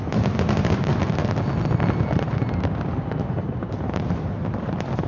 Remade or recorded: recorded